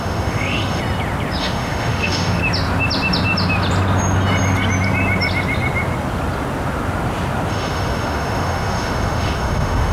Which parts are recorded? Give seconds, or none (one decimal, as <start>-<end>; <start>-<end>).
0.8-1.4; 2.4-7.5